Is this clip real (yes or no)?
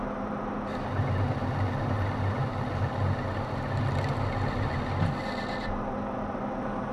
yes